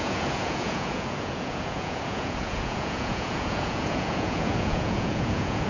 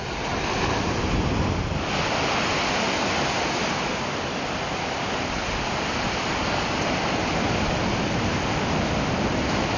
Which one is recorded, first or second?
second